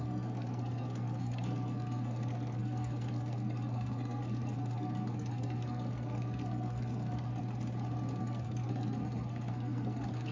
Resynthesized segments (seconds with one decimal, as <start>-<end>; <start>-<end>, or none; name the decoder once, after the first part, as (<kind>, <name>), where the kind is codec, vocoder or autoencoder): 0.0-7.4 (codec, SNAC); 8.2-10.3